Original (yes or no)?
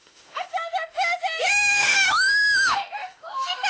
no